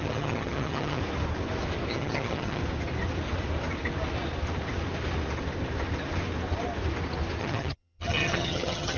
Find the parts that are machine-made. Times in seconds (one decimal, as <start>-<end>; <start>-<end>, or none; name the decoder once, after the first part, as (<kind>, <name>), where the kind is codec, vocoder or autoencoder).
0.0-1.0 (vocoder, HiFi-GAN); 1.9-2.6; 7.4-9.0